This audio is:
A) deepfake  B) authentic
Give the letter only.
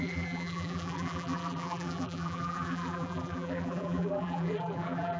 A